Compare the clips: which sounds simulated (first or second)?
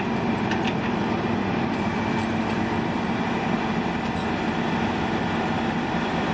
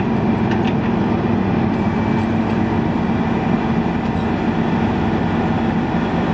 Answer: first